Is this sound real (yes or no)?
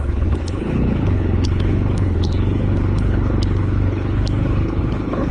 no